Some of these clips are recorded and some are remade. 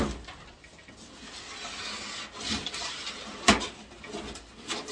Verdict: recorded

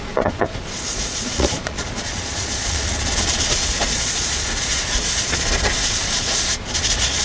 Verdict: remade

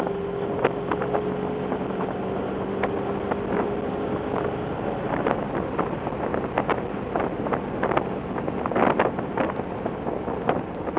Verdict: recorded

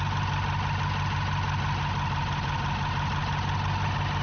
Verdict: recorded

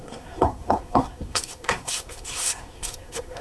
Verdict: remade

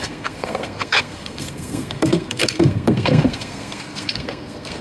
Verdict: remade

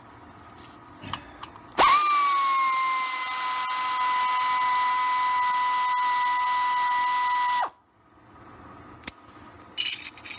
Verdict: recorded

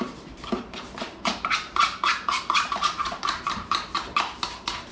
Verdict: remade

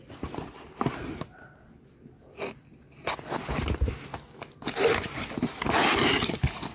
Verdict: recorded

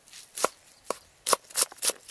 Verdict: remade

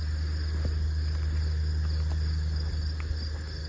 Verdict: recorded